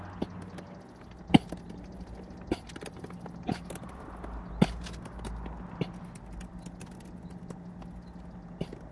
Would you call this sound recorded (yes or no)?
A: yes